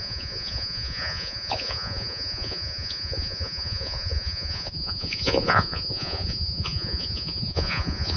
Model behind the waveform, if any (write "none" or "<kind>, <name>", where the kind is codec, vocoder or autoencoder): vocoder, Vocos